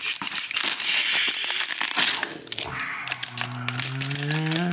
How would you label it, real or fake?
real